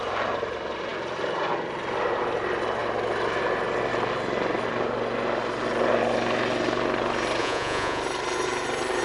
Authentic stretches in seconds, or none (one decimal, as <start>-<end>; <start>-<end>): 0.0-7.4; 8.0-9.0